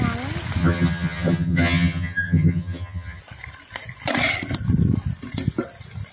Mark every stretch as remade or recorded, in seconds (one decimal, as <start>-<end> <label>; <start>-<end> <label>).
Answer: 0.0-0.6 recorded; 0.6-3.2 remade; 3.2-6.1 recorded